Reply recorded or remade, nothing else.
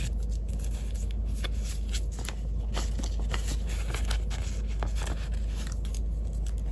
recorded